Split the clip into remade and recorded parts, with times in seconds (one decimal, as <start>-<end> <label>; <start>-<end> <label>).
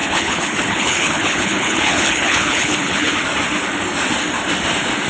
0.0-3.1 remade; 3.1-5.1 recorded